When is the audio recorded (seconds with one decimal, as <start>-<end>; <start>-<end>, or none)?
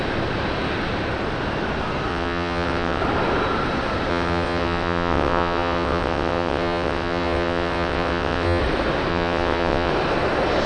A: 0.0-2.1; 3.0-4.1; 8.6-9.1; 9.9-10.7